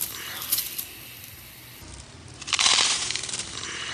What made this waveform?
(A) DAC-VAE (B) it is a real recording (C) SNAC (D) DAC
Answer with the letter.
B